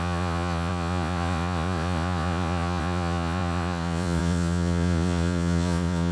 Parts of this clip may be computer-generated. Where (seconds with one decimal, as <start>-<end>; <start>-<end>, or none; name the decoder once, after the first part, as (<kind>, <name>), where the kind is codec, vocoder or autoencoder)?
0.0-6.1 (vocoder, Vocos)